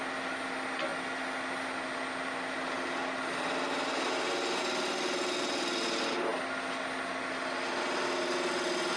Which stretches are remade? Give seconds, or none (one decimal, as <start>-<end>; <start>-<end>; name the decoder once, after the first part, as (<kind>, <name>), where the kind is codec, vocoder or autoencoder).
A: none